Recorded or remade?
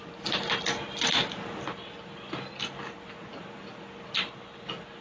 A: recorded